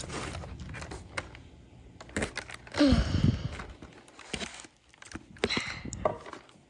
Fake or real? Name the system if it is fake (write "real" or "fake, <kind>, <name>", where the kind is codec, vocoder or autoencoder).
real